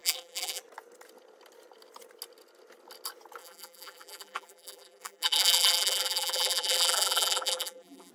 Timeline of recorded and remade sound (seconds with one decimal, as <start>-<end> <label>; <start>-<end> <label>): 0.0-0.6 remade; 0.6-3.4 recorded; 3.4-8.1 remade